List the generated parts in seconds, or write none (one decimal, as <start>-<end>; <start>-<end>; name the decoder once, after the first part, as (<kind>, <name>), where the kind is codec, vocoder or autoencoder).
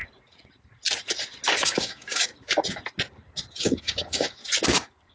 1.6-2.3 (codec, DAC); 3.5-4.4